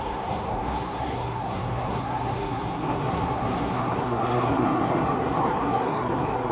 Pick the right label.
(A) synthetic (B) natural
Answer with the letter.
A